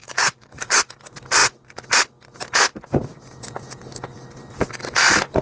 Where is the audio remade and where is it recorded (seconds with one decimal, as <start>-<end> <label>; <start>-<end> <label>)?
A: 0.0-0.8 remade; 0.8-5.4 recorded